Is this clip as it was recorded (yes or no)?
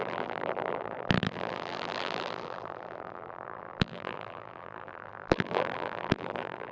no